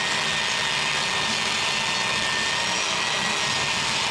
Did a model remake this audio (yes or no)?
no